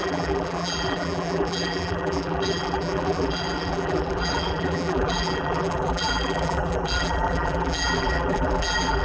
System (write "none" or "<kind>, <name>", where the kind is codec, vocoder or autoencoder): vocoder, BigVGAN v2